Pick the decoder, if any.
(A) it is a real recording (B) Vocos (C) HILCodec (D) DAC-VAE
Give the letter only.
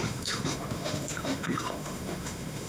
D